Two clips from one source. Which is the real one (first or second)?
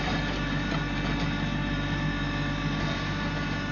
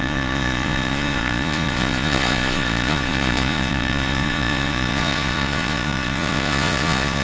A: first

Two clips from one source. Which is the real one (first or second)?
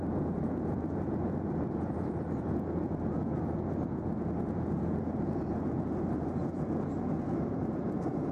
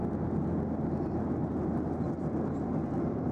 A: second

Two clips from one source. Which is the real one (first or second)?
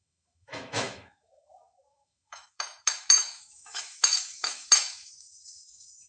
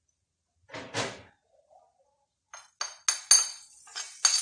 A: second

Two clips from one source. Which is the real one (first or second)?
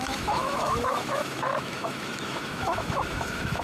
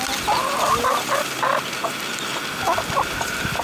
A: second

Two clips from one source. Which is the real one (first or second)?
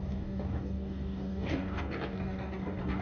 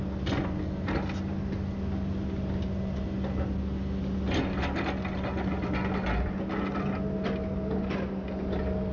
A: second